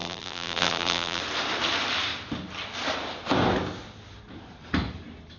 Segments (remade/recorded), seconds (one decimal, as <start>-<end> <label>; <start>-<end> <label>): 0.0-1.2 remade; 1.2-5.4 recorded